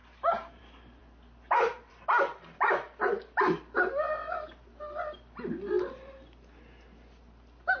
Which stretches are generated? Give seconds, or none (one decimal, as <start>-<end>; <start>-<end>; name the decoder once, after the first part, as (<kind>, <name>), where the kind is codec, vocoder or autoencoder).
0.0-0.6 (vocoder, BigVGAN v2); 2.3-5.5